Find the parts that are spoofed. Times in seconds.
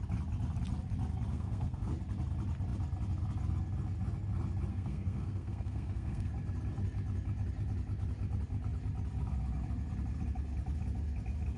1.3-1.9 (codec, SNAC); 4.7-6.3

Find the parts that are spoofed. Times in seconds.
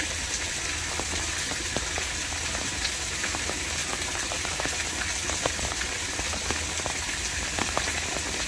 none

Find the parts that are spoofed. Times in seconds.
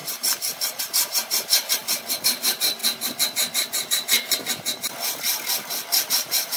0.0-1.8 (vocoder, BigVGAN v2); 2.3-2.8; 6.1-6.6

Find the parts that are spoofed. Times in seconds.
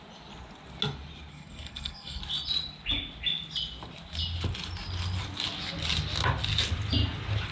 1.3-2.2 (codec, SNAC)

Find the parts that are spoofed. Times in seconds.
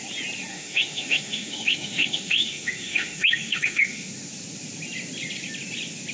0.5-4.1 (autoencoder, DAC-VAE)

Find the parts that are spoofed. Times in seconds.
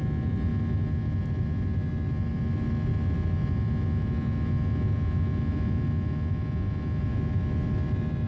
none